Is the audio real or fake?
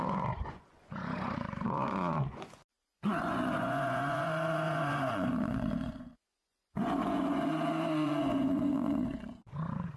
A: fake